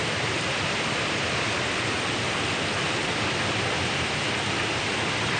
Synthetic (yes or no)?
no